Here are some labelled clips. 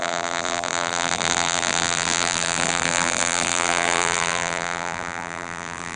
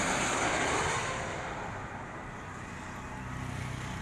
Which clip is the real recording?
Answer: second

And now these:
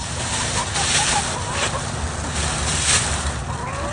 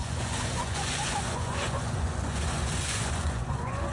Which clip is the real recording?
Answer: first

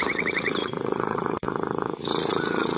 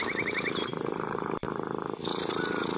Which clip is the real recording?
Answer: second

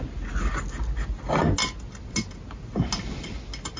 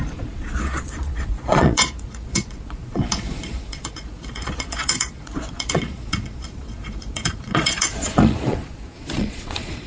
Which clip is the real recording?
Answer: first